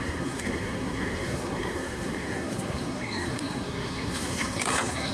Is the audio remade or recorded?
remade